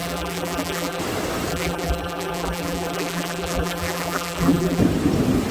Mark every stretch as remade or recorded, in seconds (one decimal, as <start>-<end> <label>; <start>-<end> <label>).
0.0-1.0 remade; 1.0-1.5 recorded; 1.5-4.8 remade; 4.8-5.5 recorded